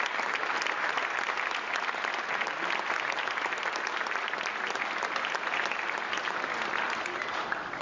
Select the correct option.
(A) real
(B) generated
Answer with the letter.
A